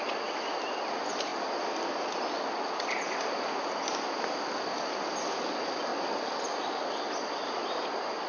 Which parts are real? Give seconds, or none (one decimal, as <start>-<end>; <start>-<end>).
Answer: 0.0-8.3